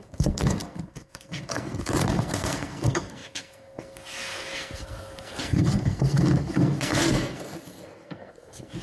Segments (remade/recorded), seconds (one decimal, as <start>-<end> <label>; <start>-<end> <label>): 0.0-8.8 remade